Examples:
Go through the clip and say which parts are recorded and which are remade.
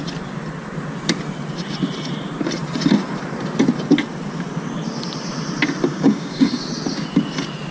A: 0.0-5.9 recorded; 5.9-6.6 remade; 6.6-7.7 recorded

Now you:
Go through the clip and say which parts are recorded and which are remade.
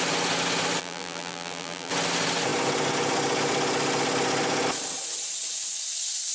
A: 0.0-0.8 recorded; 0.8-1.9 remade; 1.9-6.3 recorded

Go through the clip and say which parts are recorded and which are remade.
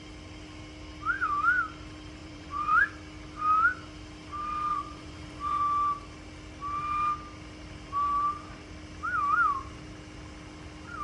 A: 0.0-2.2 recorded; 2.2-2.9 remade; 2.9-4.7 recorded; 4.7-5.6 remade; 5.6-11.0 recorded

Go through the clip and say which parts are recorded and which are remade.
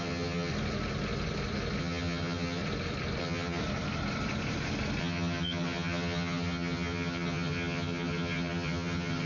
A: 0.0-0.5 remade; 0.5-1.8 recorded; 1.8-2.6 remade; 2.6-3.2 recorded; 3.2-3.6 remade; 3.6-5.0 recorded; 5.0-9.3 remade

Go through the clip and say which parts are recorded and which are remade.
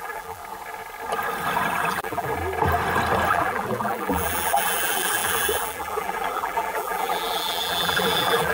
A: 0.0-0.4 remade; 0.4-1.9 recorded; 1.9-2.3 remade; 2.3-3.3 recorded; 3.3-8.5 remade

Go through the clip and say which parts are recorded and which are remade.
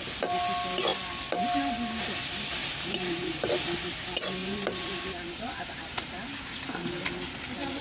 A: 0.0-2.6 recorded; 2.6-3.4 remade; 3.4-4.4 recorded; 4.4-6.4 remade; 6.4-7.8 recorded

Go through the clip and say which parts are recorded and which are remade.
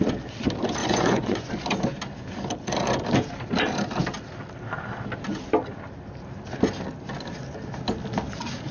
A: 0.0-0.8 recorded; 0.8-1.5 remade; 1.5-8.7 recorded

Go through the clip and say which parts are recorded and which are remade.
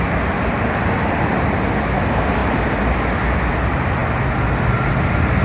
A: 0.0-5.4 recorded